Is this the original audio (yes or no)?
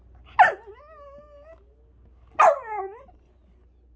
yes